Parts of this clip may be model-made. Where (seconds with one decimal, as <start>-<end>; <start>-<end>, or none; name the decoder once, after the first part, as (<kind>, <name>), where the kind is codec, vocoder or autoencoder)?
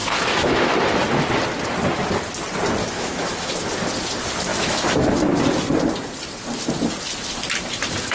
0.0-0.7 (autoencoder, DAC-VAE); 2.8-3.6; 4.5-5.4